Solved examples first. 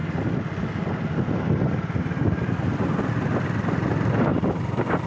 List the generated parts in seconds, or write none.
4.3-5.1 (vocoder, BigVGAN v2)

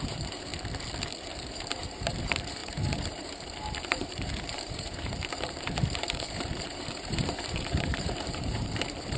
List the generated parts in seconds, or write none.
0.0-0.5 (vocoder, BigVGAN v2); 1.2-9.2